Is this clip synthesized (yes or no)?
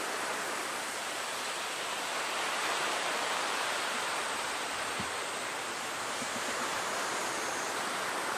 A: yes